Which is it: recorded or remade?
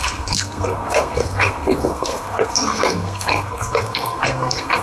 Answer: remade